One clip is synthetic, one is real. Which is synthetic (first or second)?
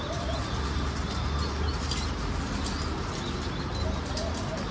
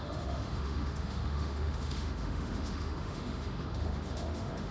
second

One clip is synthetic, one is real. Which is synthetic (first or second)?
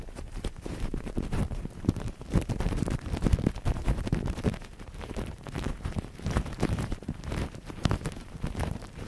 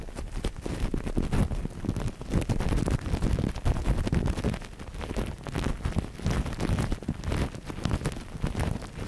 first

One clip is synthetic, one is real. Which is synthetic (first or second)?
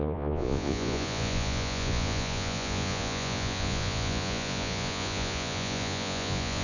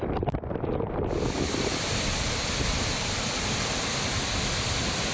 first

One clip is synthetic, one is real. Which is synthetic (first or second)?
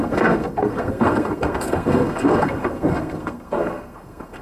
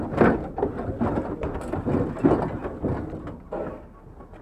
first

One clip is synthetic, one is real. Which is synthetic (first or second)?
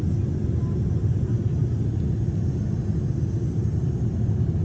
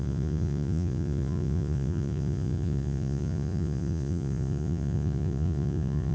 second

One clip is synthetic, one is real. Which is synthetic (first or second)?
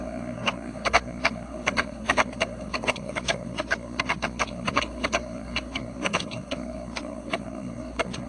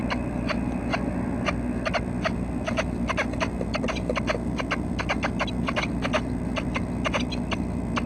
first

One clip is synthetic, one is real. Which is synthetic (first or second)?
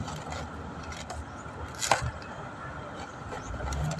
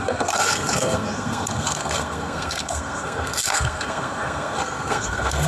second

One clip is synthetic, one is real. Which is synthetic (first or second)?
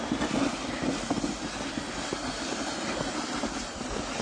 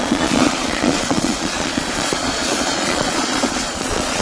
second